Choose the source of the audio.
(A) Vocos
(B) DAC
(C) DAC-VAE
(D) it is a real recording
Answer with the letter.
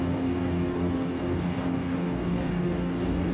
B